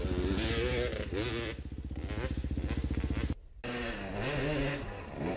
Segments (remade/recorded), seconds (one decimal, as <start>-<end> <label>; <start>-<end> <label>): 0.0-5.4 recorded